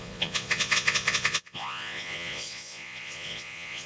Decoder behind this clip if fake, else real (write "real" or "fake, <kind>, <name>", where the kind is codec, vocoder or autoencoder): fake, vocoder, Vocos